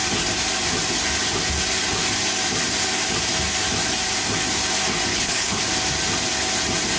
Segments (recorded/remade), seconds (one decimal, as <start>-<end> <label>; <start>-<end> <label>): 0.0-5.1 recorded; 5.1-5.6 remade; 5.6-7.0 recorded